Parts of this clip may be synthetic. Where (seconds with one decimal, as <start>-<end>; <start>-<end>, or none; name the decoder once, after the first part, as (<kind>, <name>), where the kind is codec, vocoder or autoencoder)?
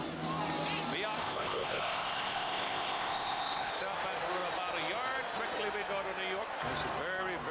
1.2-3.7 (codec, ZipCodec)